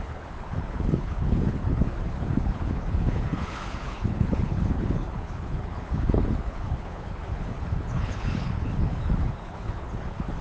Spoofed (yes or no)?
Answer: yes